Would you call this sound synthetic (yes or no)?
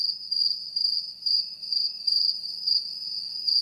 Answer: yes